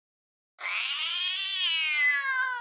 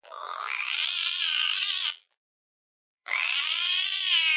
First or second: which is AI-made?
second